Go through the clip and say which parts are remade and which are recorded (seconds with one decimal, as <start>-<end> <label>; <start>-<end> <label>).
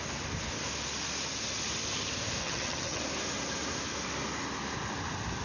0.0-2.4 recorded; 2.4-3.0 remade; 3.0-5.4 recorded